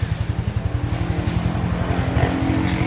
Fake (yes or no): no